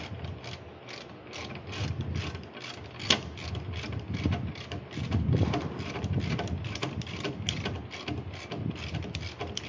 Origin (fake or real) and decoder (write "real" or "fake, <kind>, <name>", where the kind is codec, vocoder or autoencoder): real